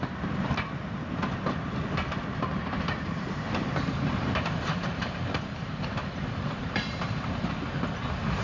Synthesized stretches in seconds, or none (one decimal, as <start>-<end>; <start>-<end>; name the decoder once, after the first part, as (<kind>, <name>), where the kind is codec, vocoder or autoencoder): 2.5-7.5 (vocoder, BigVGAN v2)